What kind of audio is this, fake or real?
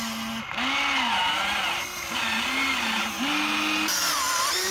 real